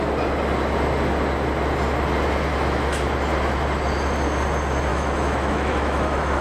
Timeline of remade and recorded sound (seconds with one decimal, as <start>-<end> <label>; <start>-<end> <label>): 0.0-2.5 recorded; 2.5-3.0 remade; 3.0-4.9 recorded; 4.9-6.4 remade